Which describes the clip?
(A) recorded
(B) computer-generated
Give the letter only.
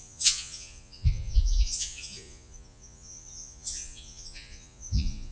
B